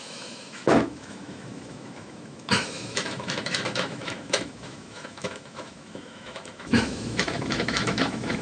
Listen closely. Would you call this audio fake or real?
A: fake